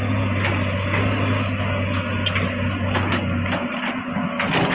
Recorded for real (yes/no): yes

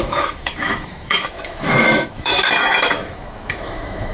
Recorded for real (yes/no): no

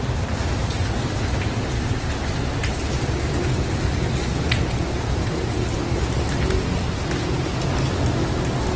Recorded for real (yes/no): yes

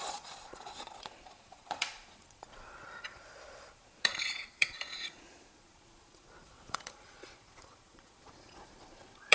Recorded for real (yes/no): no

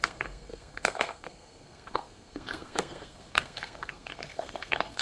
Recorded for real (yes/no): no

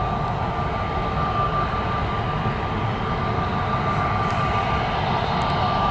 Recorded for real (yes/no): yes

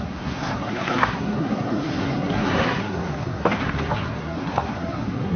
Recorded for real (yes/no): no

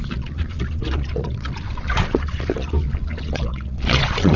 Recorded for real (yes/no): no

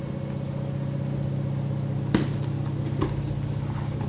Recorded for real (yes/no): yes